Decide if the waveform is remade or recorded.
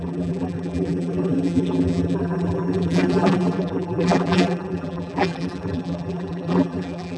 remade